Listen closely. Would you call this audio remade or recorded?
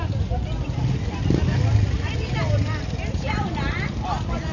recorded